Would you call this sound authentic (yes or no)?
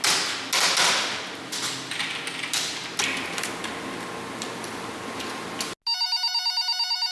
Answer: yes